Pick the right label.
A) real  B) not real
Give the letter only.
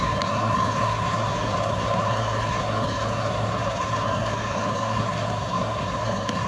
B